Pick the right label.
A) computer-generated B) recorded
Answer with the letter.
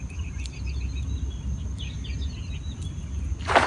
B